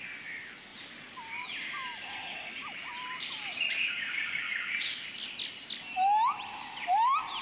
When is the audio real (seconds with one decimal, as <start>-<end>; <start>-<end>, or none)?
0.0-3.9; 4.4-7.4